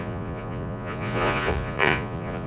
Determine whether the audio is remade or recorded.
remade